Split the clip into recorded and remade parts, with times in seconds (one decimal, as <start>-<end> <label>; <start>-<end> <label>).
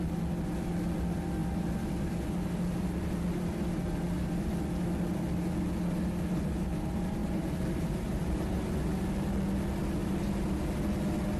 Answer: 0.0-7.2 recorded; 7.2-8.6 remade; 8.6-10.0 recorded; 10.0-10.6 remade; 10.6-11.4 recorded